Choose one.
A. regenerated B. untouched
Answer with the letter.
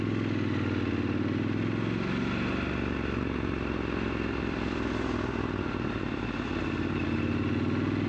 B